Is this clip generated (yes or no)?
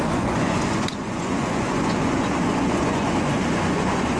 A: yes